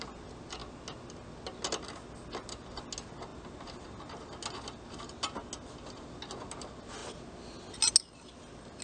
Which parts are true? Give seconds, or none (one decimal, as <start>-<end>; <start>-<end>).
0.0-8.8